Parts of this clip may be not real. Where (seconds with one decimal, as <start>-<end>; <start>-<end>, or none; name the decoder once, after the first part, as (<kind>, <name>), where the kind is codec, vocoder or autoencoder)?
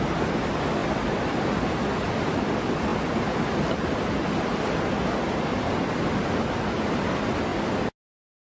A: none